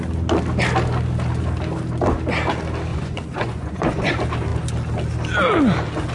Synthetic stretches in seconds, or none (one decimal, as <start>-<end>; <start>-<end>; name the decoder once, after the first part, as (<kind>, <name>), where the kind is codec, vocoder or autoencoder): 2.9-4.1 (vocoder, Vocos)